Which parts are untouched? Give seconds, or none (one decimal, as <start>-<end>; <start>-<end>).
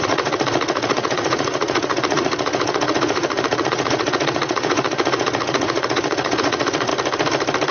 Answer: 6.9-7.7